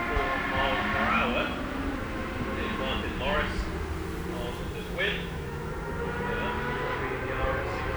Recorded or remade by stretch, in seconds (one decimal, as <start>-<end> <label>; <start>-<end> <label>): 0.0-4.8 recorded; 4.8-5.7 remade; 5.7-8.0 recorded

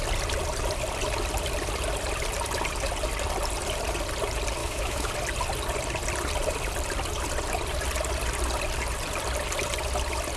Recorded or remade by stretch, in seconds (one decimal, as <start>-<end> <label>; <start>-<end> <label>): 0.0-4.6 recorded; 4.6-5.1 remade; 5.1-10.4 recorded

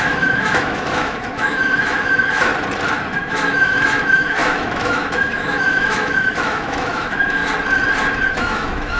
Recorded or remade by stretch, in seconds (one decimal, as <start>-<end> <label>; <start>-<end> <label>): 0.0-2.5 remade; 2.5-3.1 recorded; 3.1-7.4 remade; 7.4-8.3 recorded; 8.3-9.0 remade

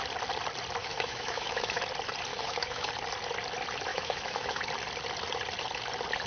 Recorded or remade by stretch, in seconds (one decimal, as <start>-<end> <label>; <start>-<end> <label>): 0.0-0.8 recorded; 0.8-1.8 remade; 1.8-2.3 recorded; 2.3-2.9 remade; 2.9-3.9 recorded; 3.9-4.6 remade; 4.6-6.3 recorded

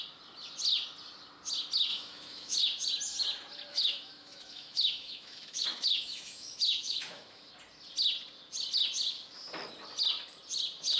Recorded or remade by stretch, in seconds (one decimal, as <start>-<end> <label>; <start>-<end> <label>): 0.0-1.9 recorded; 1.9-2.6 remade; 2.6-3.7 recorded; 3.7-7.5 remade; 7.5-11.0 recorded

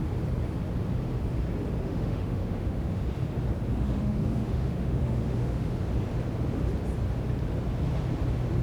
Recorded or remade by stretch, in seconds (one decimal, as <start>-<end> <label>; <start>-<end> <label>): 0.0-1.8 recorded; 1.8-3.0 remade; 3.0-3.7 recorded; 3.7-5.8 remade; 5.8-8.6 recorded

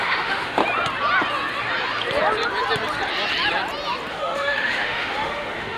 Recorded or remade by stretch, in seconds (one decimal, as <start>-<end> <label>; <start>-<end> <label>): 0.0-0.6 remade; 0.6-4.1 recorded; 4.1-5.8 remade

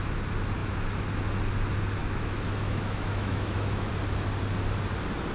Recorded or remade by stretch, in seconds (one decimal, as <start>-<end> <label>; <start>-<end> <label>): 0.0-2.0 recorded; 2.0-3.9 remade; 3.9-5.3 recorded